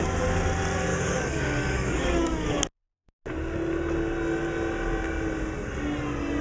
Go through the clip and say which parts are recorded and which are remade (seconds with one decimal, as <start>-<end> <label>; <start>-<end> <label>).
0.0-0.9 recorded; 0.9-2.6 remade; 2.6-6.4 recorded